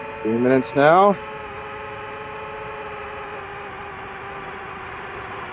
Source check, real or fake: real